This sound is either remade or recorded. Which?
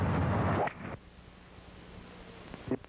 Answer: recorded